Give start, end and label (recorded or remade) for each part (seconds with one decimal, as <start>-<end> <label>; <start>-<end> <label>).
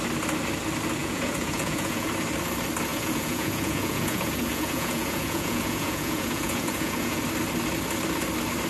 0.0-1.0 recorded; 1.0-2.1 remade; 2.1-2.9 recorded; 2.9-7.2 remade; 7.2-8.7 recorded